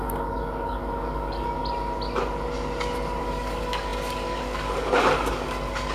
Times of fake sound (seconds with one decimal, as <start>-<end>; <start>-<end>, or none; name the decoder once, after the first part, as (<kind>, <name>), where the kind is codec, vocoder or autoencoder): 0.0-1.6 (codec, DAC); 3.2-5.9